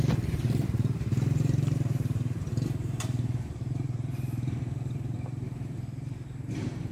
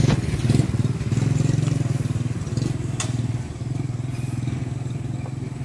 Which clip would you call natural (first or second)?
second